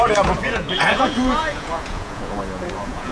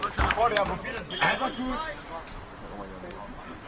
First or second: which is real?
second